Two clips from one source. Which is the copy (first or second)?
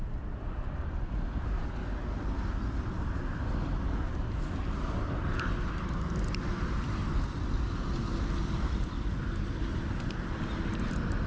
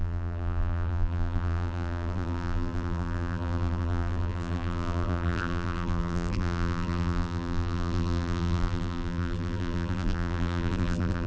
second